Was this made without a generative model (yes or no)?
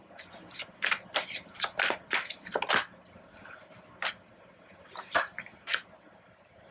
yes